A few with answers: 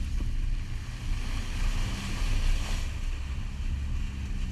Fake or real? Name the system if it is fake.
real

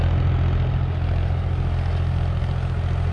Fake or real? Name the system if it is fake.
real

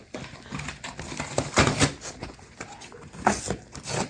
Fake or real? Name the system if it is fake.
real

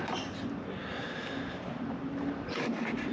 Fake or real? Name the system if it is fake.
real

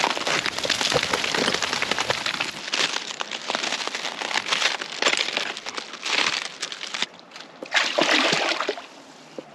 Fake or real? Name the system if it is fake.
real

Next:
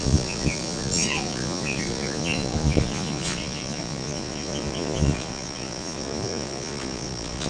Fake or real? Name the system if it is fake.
fake, vocoder, Vocos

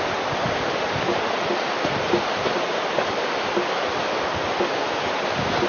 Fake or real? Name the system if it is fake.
real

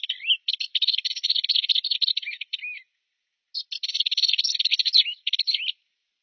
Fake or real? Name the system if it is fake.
real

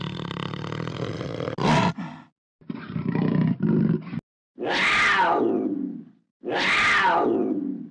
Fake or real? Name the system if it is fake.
real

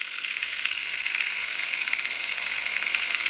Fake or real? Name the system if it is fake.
fake, codec, SNAC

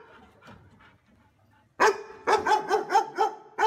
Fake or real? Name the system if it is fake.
real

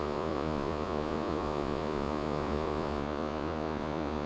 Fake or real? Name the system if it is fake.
fake, vocoder, Vocos